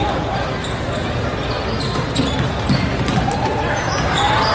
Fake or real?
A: real